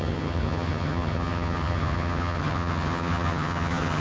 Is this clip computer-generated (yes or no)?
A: yes